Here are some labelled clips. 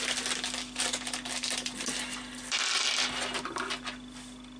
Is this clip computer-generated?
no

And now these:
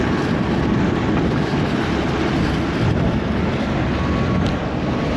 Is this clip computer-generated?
no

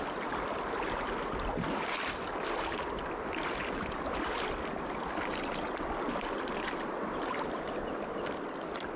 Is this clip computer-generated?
no